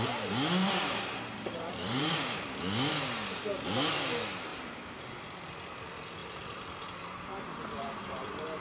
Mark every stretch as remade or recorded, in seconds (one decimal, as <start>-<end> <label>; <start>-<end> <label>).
0.0-0.6 recorded; 0.6-2.4 remade; 2.4-4.5 recorded; 4.5-5.0 remade; 5.0-6.2 recorded; 6.2-8.6 remade